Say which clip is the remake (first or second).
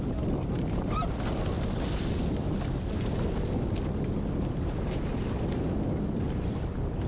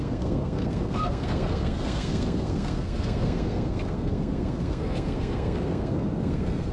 second